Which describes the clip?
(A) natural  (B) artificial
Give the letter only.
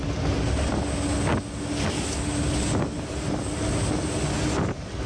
A